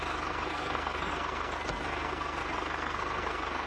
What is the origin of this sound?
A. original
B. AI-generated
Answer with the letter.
B